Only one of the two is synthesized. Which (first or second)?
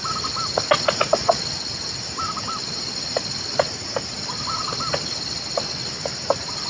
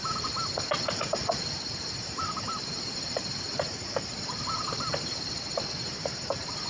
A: second